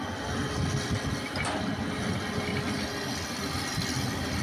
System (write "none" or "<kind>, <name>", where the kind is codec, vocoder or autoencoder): none